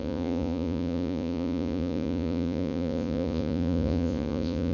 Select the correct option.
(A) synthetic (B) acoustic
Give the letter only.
A